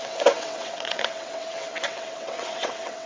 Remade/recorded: remade